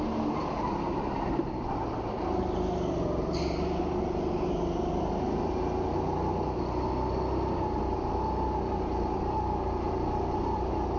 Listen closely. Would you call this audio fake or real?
real